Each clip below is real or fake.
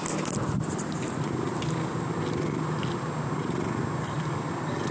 real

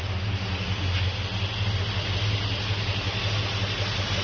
real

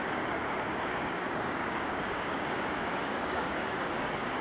fake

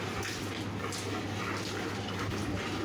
real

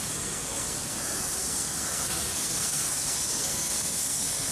fake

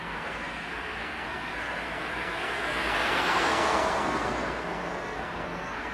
fake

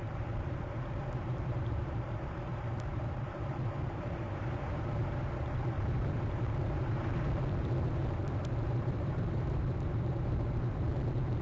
fake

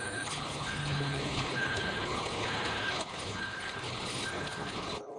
fake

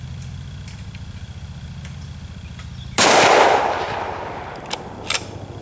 real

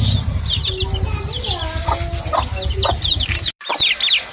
real